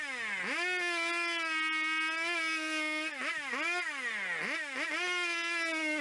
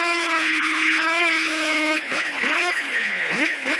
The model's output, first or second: second